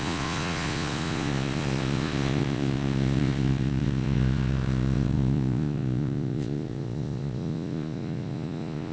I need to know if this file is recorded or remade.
remade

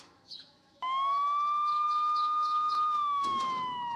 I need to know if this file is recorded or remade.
remade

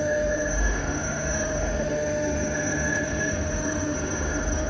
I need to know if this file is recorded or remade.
remade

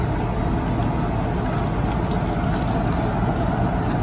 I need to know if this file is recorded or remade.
recorded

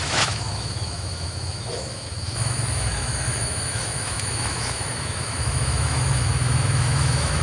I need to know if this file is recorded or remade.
remade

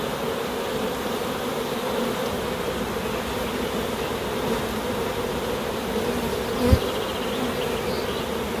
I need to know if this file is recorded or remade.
recorded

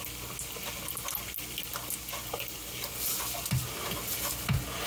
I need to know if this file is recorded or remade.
recorded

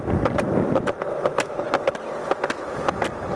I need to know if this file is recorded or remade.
recorded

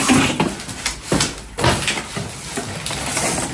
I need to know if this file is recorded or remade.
recorded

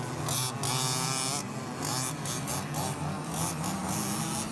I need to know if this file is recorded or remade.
recorded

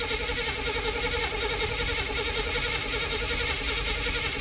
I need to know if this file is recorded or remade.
recorded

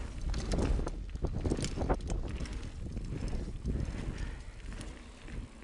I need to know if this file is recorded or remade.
recorded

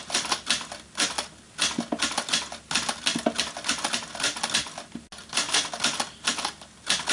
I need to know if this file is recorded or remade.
recorded